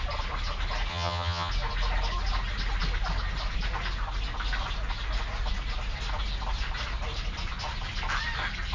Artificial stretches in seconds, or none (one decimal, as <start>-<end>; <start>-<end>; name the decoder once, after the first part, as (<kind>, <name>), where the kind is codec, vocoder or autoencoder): 0.9-1.5 (vocoder, HiFi-GAN)